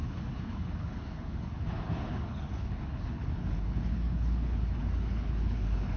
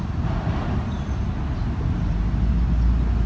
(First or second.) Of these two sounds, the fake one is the first